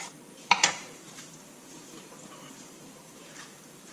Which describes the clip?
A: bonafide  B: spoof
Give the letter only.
B